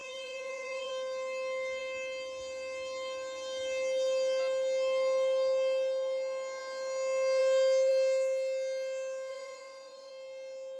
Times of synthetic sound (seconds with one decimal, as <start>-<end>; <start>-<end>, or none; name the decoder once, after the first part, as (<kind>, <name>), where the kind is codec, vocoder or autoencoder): 0.0-0.9 (vocoder, Vocos); 9.3-10.1